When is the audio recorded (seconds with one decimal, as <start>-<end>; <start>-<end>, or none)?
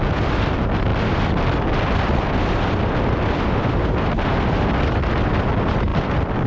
0.0-6.5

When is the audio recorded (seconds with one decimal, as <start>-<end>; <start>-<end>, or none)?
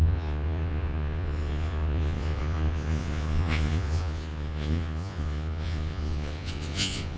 none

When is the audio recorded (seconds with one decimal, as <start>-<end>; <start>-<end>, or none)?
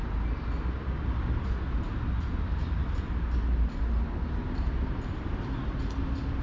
0.6-6.4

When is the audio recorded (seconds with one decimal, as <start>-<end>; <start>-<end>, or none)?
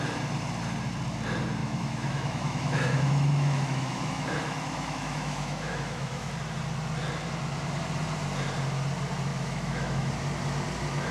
0.0-1.6; 6.3-9.3; 10.1-11.1